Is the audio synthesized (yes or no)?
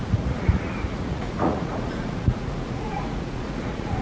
yes